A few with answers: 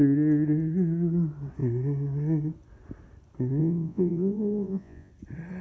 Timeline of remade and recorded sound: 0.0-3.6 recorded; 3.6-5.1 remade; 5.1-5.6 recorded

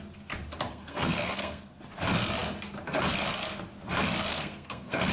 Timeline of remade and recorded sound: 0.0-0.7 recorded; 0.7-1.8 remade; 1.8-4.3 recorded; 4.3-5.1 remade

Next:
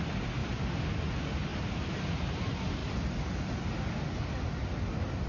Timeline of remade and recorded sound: 0.0-5.3 recorded